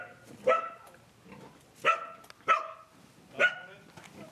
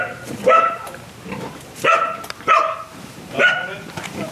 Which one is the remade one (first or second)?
second